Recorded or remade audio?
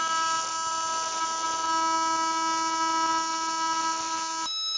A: recorded